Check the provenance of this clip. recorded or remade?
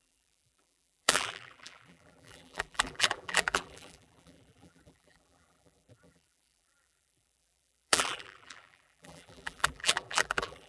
remade